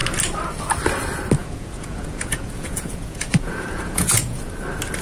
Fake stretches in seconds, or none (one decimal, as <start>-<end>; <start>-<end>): 1.4-4.4